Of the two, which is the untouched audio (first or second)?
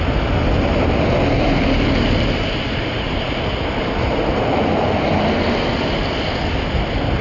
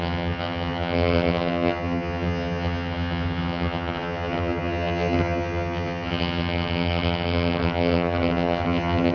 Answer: first